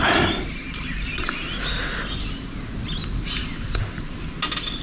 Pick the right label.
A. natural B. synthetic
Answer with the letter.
A